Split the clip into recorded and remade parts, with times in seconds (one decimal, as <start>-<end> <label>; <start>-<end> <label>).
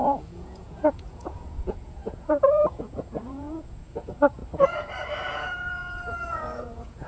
0.0-4.4 remade; 4.4-5.3 recorded; 5.3-7.1 remade